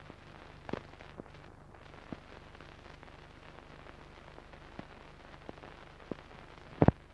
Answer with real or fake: real